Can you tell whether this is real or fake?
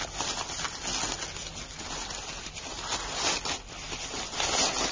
real